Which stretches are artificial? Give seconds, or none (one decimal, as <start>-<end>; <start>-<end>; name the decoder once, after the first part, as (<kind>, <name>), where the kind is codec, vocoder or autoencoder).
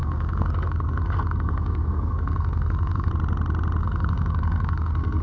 0.0-3.1 (codec, SNAC); 3.8-5.2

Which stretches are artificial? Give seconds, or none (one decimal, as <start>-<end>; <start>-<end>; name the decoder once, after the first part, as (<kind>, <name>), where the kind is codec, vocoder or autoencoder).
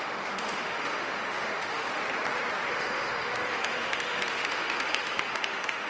0.0-2.0 (autoencoder, DAC-VAE); 2.7-5.9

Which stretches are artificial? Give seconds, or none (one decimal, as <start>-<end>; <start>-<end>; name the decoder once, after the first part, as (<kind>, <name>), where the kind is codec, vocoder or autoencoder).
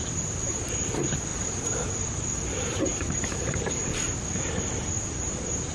none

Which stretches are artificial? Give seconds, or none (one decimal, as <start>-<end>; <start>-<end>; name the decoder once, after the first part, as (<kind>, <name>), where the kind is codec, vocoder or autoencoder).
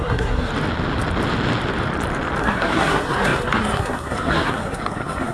0.0-0.5 (codec, SNAC); 2.4-5.3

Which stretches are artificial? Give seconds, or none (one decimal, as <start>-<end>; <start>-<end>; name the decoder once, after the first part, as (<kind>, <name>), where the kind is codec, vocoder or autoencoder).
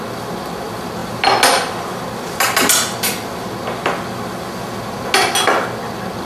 none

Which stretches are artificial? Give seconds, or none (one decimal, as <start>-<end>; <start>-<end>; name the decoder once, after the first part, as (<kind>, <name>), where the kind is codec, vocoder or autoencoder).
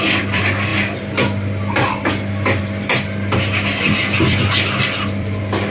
0.0-0.7 (vocoder, BigVGAN v2); 2.6-5.7